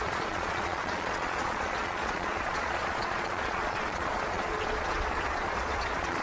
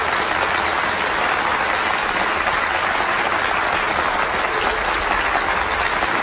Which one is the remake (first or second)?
first